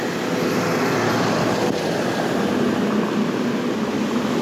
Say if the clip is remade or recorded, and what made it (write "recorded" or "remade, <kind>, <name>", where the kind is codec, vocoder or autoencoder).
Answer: recorded